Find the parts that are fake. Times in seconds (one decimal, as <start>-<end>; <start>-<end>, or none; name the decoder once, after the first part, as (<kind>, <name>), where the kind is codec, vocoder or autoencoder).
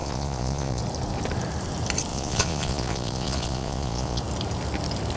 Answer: 0.0-0.8 (vocoder, Vocos); 2.1-4.2